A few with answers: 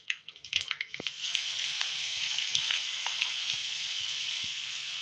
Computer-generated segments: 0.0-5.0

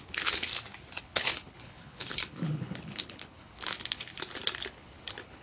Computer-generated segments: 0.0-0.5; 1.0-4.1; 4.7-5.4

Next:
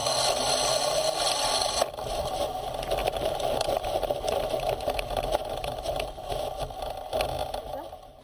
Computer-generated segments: 3.0-6.3

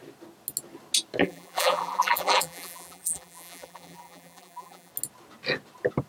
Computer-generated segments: 1.2-4.9